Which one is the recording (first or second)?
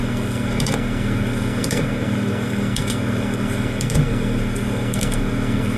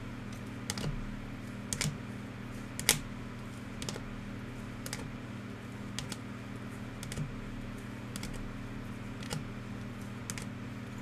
second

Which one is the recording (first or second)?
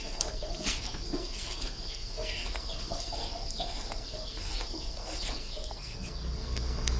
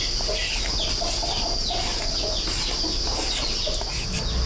second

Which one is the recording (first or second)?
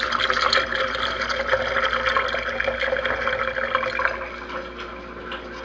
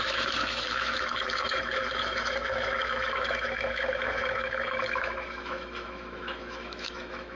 first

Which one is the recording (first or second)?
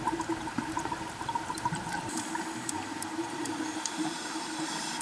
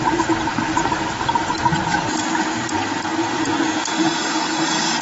second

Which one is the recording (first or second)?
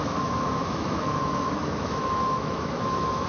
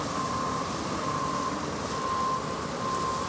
second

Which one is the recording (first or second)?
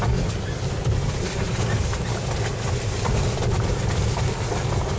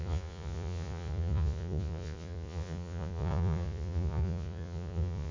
first